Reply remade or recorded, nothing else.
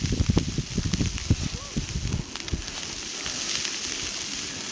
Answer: recorded